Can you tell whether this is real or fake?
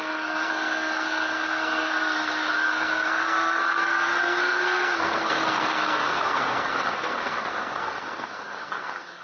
fake